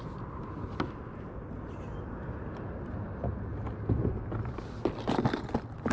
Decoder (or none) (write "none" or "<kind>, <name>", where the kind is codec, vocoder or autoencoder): none